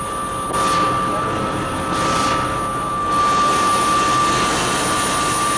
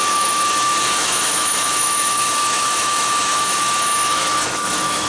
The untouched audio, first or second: first